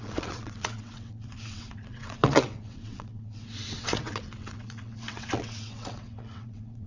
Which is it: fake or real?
fake